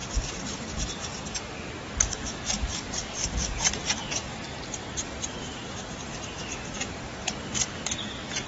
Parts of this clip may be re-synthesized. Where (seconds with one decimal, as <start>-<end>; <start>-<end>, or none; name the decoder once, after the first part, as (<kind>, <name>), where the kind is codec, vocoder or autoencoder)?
2.7-7.5 (vocoder, BigVGAN v2)